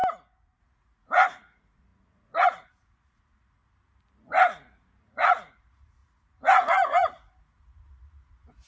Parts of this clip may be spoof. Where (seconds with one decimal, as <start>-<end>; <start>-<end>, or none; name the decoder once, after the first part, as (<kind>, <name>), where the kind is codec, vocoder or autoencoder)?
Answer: 0.6-3.6 (vocoder, Vocos); 5.0-8.7